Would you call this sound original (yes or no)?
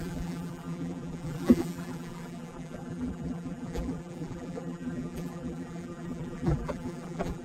no